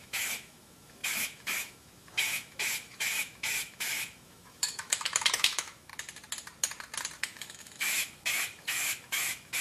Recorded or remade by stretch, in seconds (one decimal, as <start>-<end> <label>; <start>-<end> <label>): 0.0-5.9 remade; 5.9-7.2 recorded; 7.2-9.6 remade